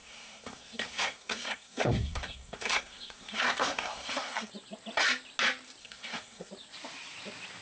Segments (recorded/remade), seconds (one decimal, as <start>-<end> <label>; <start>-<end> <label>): 0.0-4.5 remade; 4.5-5.8 recorded; 5.8-6.5 remade; 6.5-7.6 recorded

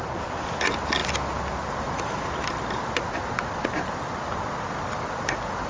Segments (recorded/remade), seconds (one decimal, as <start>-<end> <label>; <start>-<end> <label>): 0.0-5.7 recorded

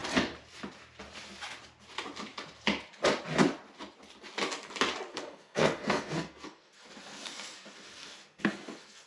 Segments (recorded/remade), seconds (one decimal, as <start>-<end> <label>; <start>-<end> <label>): 0.0-5.1 recorded; 5.1-9.1 remade

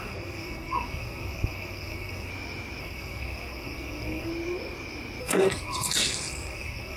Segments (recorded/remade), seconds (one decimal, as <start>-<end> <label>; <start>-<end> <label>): 0.0-2.3 remade; 2.3-2.8 recorded; 2.8-4.3 remade; 4.3-5.2 recorded; 5.2-7.0 remade